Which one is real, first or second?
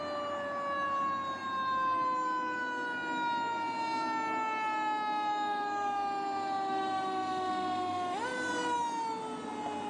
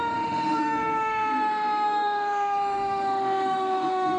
first